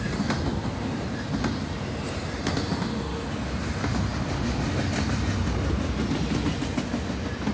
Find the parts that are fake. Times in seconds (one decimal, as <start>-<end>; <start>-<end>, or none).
none